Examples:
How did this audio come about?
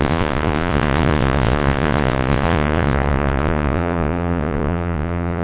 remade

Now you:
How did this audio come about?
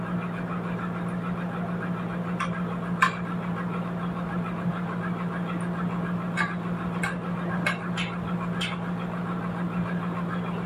recorded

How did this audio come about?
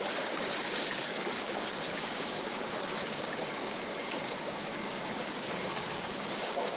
remade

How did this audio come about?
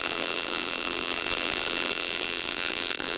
remade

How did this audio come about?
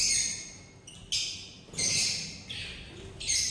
recorded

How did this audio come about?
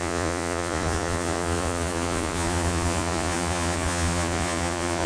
remade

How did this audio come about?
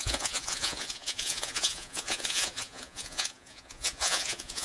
remade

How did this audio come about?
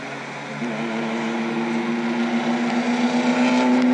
recorded